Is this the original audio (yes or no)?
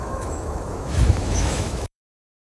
no